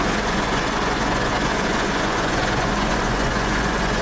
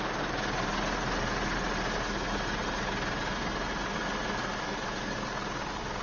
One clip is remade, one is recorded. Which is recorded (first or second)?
second